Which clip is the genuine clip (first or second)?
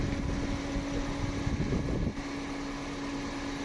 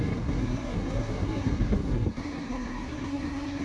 first